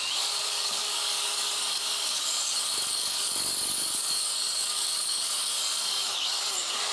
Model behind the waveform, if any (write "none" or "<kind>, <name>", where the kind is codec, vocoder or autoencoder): codec, DAC